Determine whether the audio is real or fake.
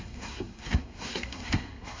fake